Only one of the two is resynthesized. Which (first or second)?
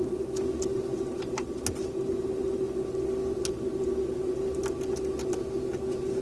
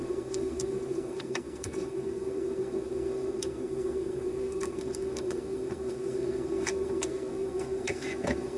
second